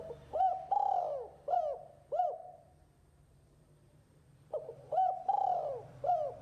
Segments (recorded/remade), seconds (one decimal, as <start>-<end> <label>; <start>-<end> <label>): 0.0-2.4 recorded; 2.4-6.4 remade